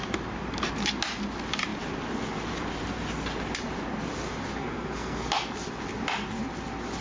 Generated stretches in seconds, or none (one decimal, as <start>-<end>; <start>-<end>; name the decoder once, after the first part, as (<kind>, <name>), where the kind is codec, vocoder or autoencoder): 4.6-5.3 (codec, SNAC)